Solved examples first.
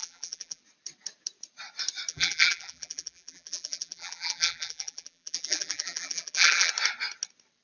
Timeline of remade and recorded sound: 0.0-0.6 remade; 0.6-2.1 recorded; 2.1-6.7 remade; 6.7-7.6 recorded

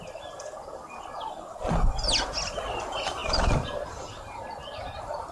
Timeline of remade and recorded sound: 0.0-5.3 recorded

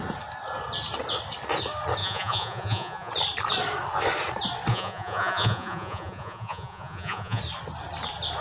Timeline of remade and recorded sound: 0.0-2.0 recorded; 2.0-3.1 remade; 3.1-4.7 recorded; 4.7-7.4 remade; 7.4-8.4 recorded

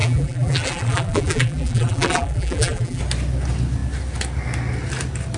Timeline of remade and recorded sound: 0.0-3.0 remade; 3.0-5.4 recorded